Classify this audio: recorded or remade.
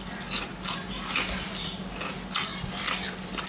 recorded